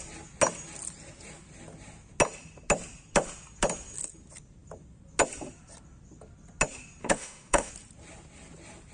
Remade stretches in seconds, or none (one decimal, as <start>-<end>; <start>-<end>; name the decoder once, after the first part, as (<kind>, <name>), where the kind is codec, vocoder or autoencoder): 7.0-7.7 (autoencoder, DAC-VAE)